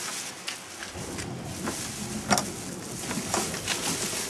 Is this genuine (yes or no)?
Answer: yes